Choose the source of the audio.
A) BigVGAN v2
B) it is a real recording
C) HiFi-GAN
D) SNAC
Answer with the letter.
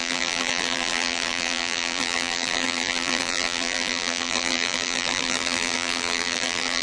A